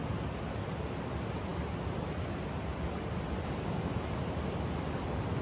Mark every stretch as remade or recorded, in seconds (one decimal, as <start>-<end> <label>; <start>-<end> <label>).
0.0-5.4 recorded